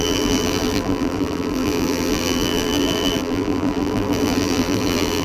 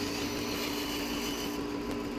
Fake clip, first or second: first